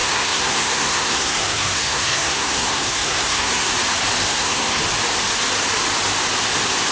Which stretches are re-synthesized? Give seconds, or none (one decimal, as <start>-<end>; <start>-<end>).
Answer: 0.0-3.7; 4.2-4.8